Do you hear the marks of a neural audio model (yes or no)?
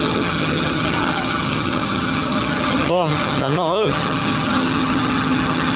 yes